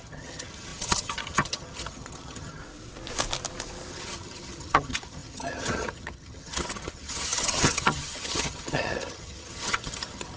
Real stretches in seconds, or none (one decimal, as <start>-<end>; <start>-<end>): 2.6-3.9